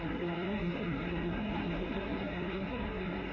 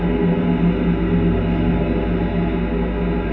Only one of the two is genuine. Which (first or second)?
second